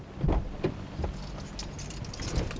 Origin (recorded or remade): recorded